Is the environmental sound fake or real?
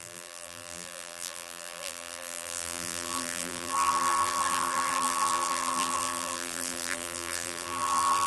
fake